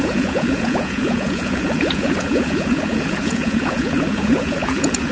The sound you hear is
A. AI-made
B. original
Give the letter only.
A